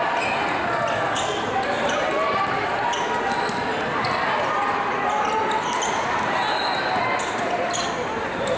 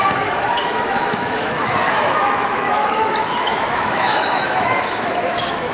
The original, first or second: first